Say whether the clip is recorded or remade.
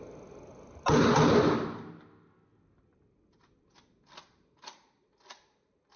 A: recorded